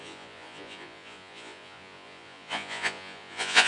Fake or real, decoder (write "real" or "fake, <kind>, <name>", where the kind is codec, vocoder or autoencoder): fake, vocoder, Vocos